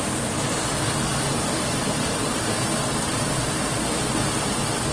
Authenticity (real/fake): real